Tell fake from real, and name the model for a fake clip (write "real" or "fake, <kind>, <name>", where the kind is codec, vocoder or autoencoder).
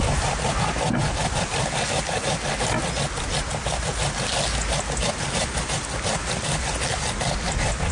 real